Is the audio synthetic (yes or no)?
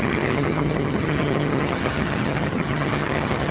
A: yes